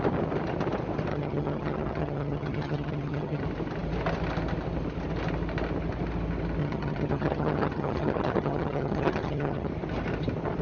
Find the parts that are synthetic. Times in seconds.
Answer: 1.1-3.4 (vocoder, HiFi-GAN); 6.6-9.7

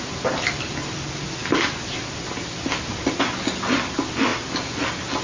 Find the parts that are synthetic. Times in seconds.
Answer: none

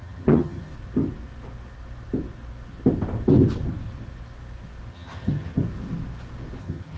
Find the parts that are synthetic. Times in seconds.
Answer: 0.0-0.7 (vocoder, HiFi-GAN); 4.9-5.6; 6.6-7.0

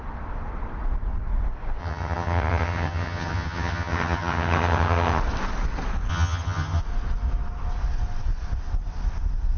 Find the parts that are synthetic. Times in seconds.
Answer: 1.8-5.2 (vocoder, HiFi-GAN); 6.1-6.8

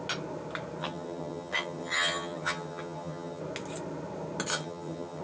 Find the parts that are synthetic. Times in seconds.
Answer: 0.8-3.4 (vocoder, HiFi-GAN); 4.5-5.2

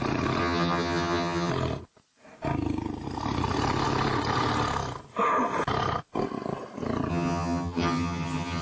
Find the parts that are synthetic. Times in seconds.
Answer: 0.4-1.5 (vocoder, HiFi-GAN); 7.1-8.6